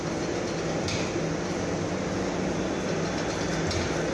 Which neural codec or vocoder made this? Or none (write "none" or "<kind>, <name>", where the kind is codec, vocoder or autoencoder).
none